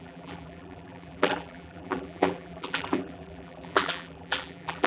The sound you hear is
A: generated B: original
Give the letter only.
A